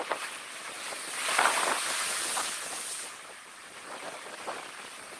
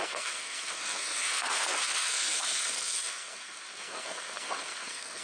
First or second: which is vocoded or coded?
second